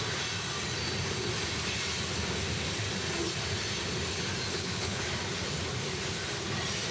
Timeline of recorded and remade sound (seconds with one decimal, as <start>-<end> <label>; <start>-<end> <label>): 0.0-4.5 recorded; 4.5-5.0 remade; 5.0-6.9 recorded